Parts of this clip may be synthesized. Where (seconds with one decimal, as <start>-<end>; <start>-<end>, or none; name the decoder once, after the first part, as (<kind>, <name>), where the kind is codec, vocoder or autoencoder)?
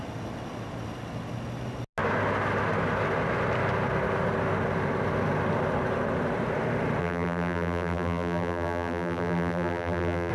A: 7.0-10.3 (vocoder, BigVGAN v2)